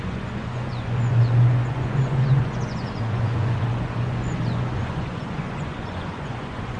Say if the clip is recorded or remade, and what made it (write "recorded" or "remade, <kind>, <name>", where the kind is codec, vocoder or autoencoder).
remade, vocoder, Vocos